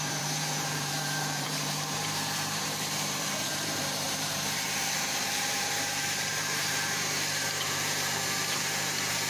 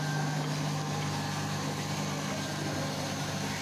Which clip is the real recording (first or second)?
second